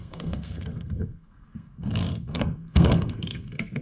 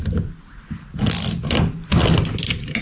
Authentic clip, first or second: second